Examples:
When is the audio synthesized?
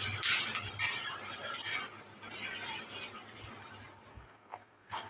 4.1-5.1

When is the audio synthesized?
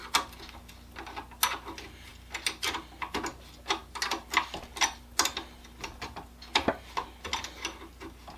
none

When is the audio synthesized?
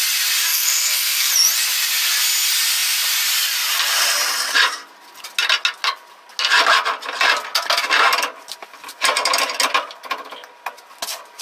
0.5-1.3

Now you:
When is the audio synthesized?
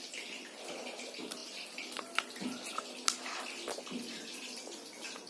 none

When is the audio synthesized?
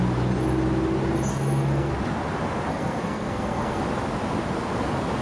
1.3-1.9; 2.7-3.8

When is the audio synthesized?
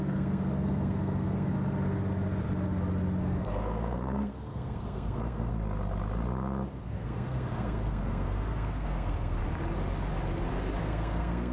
0.0-1.5; 3.2-5.5; 6.8-9.4; 10.8-11.5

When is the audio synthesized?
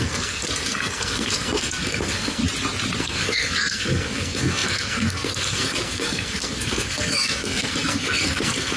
0.0-2.4; 3.0-8.8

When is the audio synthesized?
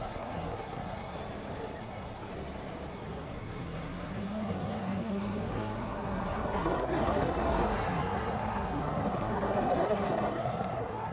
0.0-1.2; 1.8-2.3; 2.9-11.1